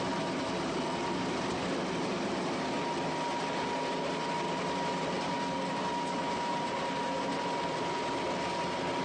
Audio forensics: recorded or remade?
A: recorded